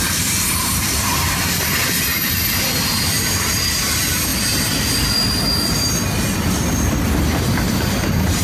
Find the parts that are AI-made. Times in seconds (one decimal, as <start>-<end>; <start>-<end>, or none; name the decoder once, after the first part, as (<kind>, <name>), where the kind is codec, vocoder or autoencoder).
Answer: 0.0-4.3 (vocoder, BigVGAN v2); 7.2-8.4